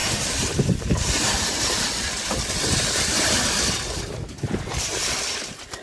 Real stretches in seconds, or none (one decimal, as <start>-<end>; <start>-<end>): 3.5-5.8

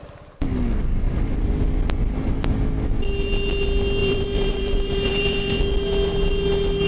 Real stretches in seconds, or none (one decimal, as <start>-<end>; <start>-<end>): 0.0-4.0; 5.6-6.9

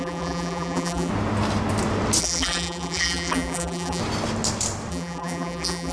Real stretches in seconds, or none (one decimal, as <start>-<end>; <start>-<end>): 1.1-2.2; 4.0-4.9

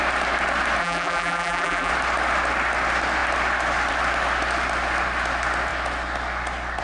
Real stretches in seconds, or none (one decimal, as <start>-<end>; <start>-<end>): 0.0-0.8; 1.9-6.8